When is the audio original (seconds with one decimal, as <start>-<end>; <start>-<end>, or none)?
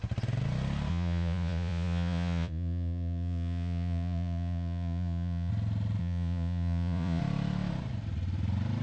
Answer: 0.0-0.9; 5.5-6.0; 7.2-8.8